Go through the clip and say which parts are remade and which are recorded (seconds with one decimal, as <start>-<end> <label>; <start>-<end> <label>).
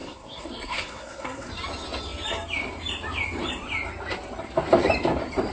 0.0-1.5 remade; 1.5-5.5 recorded